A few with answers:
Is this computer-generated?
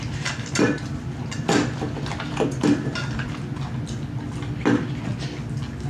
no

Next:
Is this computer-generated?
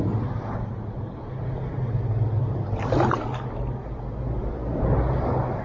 no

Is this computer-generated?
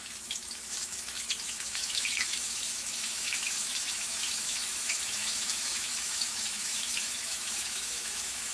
yes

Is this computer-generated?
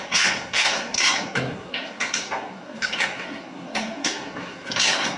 yes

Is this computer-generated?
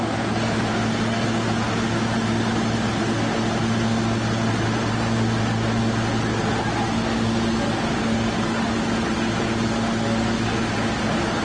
no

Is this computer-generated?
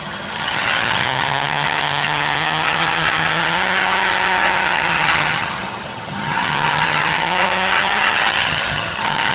yes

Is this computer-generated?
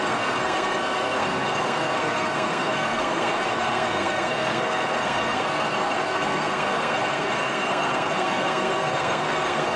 yes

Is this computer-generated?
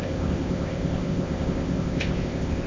yes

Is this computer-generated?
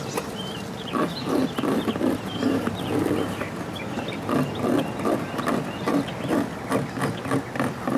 no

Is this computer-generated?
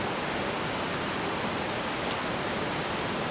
no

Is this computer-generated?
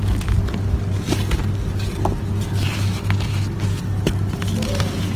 no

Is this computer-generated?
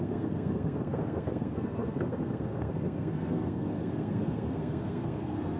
yes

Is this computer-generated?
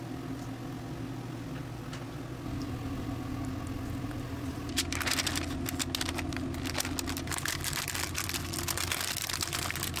no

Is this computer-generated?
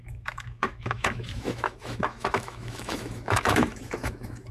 yes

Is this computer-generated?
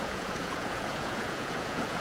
yes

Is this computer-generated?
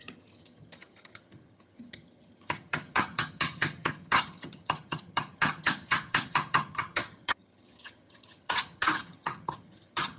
yes